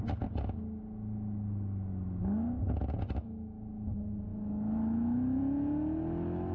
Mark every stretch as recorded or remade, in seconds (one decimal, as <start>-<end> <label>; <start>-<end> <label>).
0.0-4.3 recorded; 4.3-5.4 remade; 5.4-6.5 recorded